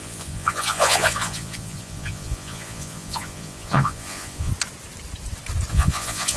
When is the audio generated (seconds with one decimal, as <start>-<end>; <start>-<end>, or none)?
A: 0.0-4.5; 5.7-6.4

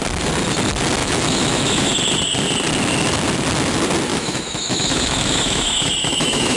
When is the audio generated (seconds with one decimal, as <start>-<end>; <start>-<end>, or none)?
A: 1.0-1.9; 4.1-6.6

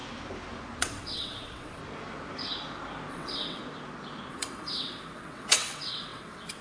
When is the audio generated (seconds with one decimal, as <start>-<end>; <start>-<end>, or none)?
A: 0.8-1.8; 3.1-3.6; 4.3-6.6

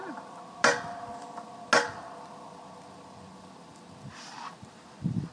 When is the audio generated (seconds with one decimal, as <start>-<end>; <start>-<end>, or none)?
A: none

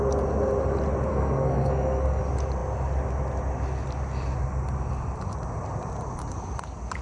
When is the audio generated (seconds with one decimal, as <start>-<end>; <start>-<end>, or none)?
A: 1.1-2.2

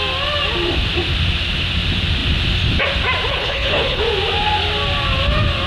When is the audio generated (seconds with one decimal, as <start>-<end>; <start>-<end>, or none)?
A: 3.3-4.0

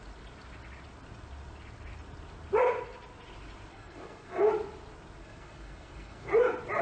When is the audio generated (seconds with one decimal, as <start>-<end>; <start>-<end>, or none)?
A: 3.7-4.5; 5.2-6.3